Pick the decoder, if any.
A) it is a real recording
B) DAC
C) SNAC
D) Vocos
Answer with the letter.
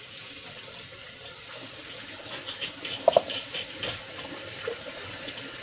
A